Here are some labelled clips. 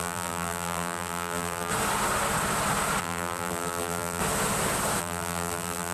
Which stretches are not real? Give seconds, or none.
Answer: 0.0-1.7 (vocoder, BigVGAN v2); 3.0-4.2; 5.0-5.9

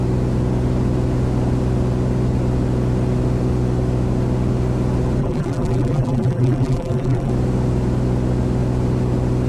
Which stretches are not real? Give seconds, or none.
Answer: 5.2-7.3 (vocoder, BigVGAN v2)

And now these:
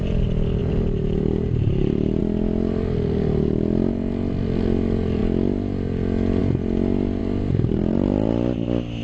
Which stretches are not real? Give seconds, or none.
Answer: 0.6-2.2 (vocoder, BigVGAN v2); 7.2-8.3